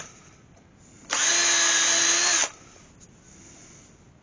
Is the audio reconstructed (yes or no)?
no